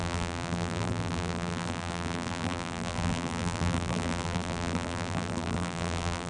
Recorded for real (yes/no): no